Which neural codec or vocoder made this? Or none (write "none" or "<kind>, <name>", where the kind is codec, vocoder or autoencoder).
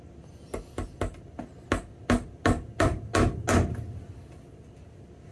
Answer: none